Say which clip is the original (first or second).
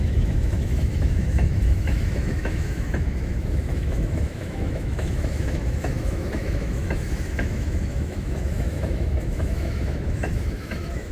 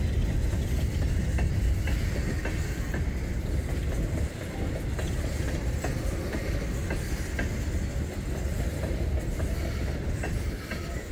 second